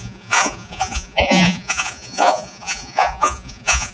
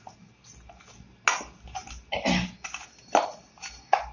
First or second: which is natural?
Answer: second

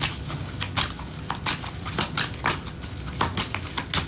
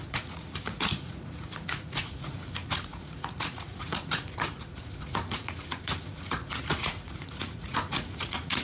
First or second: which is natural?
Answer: first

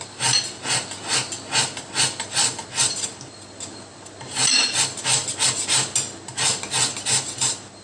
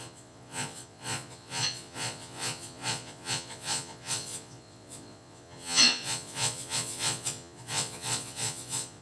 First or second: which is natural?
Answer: first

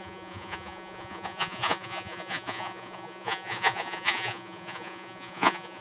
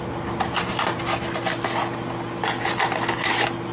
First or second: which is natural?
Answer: second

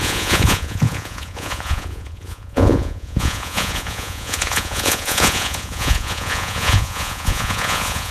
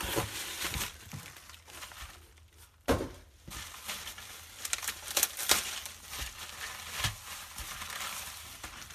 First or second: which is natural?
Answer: second